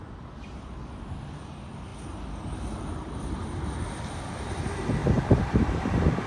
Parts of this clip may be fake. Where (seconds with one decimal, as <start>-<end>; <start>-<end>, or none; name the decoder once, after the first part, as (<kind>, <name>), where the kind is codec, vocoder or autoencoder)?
none